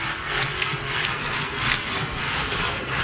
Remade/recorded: remade